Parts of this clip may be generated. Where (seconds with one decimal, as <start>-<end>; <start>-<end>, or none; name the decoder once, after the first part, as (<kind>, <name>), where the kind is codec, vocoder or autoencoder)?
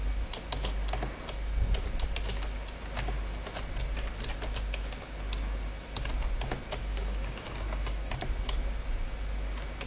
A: 6.8-8.1 (codec, DAC)